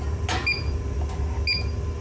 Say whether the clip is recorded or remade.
recorded